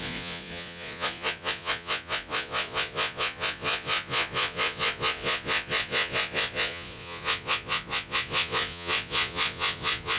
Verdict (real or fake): fake